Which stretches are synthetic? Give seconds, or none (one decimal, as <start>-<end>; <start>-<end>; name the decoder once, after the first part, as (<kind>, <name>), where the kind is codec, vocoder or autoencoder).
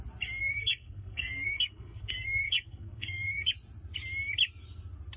0.4-3.5 (codec, SNAC)